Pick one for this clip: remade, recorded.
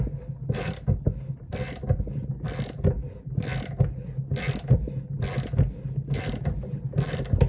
recorded